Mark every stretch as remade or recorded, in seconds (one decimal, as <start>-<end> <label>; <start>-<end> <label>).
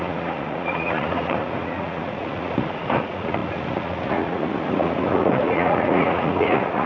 0.0-6.9 remade